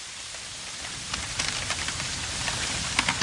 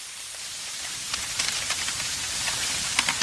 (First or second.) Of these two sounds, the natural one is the first